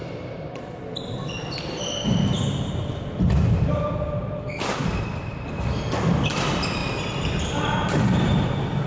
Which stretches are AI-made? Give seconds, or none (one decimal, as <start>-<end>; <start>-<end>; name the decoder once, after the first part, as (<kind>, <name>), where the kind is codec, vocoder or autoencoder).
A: none